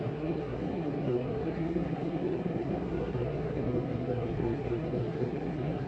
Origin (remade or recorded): remade